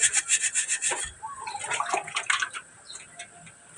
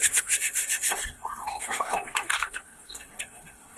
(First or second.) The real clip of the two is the first